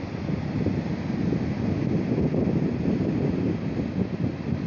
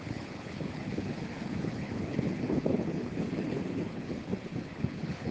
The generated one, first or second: second